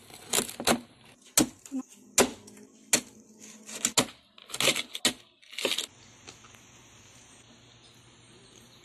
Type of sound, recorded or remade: recorded